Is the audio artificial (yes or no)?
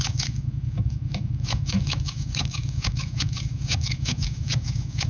yes